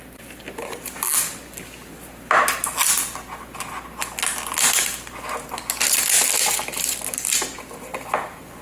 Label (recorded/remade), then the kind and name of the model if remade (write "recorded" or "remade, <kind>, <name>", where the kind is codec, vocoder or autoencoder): recorded